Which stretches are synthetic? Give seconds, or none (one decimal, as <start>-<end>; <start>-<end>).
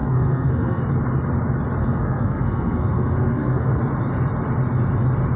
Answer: 0.0-0.8; 1.8-3.8